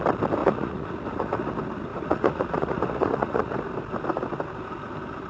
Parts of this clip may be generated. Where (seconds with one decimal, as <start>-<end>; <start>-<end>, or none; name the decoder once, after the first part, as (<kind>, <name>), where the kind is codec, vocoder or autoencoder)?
0.4-1.5 (vocoder, Vocos); 1.9-3.6